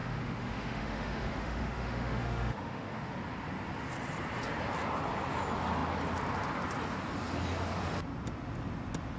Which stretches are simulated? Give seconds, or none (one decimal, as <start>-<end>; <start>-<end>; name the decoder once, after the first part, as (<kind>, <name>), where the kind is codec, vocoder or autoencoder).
0.0-3.1 (autoencoder, DAC-VAE)